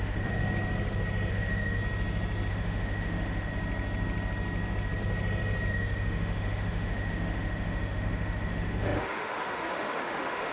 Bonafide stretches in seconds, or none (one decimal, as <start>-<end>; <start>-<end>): 0.4-1.3; 1.8-2.5; 3.5-5.7